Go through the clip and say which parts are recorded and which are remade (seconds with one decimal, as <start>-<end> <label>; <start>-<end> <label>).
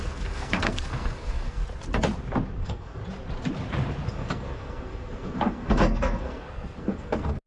0.0-1.6 remade; 1.6-2.6 recorded; 2.6-3.0 remade; 3.0-4.1 recorded; 4.1-7.5 remade